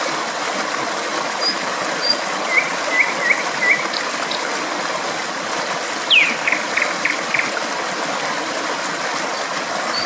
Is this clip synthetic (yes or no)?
no